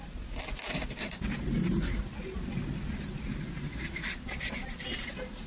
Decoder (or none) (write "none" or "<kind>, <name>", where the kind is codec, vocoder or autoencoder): none